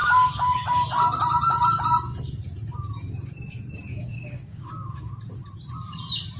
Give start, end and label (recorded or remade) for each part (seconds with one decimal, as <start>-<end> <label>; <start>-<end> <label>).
0.0-0.9 remade; 0.9-3.9 recorded; 3.9-5.1 remade; 5.1-6.4 recorded